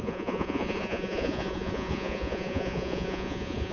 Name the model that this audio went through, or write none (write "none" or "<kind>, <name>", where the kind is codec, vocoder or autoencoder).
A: vocoder, Vocos